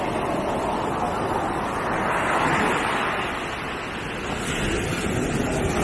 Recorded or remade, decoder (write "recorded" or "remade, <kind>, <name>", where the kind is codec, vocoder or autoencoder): recorded